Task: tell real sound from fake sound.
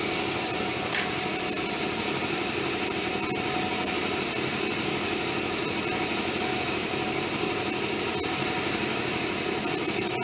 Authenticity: real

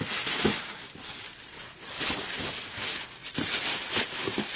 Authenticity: real